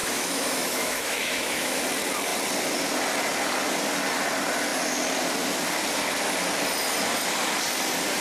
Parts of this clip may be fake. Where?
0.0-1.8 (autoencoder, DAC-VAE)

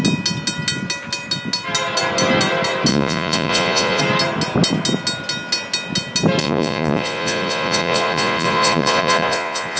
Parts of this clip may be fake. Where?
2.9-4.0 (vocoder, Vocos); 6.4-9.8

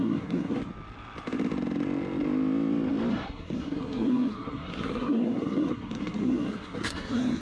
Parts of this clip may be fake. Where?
0.0-0.6 (codec, SNAC); 3.1-7.4